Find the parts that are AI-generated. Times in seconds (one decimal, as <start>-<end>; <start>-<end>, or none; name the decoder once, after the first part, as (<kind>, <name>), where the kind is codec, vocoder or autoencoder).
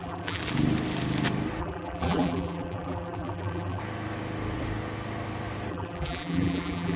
0.0-0.4 (vocoder, BigVGAN v2); 1.6-3.8; 5.7-7.0